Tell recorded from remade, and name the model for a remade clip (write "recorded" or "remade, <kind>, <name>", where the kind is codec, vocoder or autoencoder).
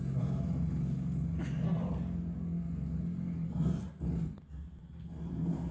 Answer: recorded